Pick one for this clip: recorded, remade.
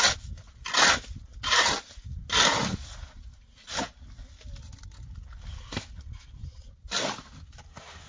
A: recorded